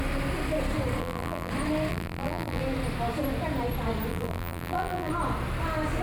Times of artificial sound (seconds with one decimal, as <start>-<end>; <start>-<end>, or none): 1.0-1.5; 1.9-2.6; 4.1-5.1